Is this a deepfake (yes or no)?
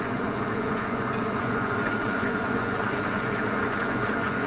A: yes